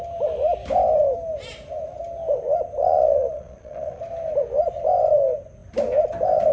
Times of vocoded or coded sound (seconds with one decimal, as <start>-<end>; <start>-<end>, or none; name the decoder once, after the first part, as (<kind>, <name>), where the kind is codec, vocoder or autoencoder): 2.8-4.0 (vocoder, Vocos)